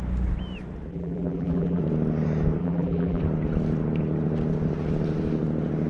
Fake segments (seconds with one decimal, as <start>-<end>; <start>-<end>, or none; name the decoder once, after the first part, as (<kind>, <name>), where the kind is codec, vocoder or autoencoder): 0.9-1.8 (vocoder, BigVGAN v2); 2.6-3.2